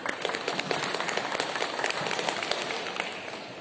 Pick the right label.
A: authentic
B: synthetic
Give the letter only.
A